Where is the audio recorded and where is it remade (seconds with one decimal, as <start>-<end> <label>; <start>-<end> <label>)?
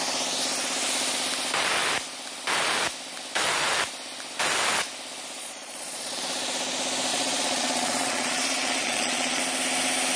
0.0-5.4 recorded; 5.4-6.2 remade; 6.2-7.1 recorded; 7.1-9.4 remade; 9.4-10.2 recorded